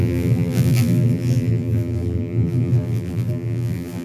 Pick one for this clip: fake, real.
fake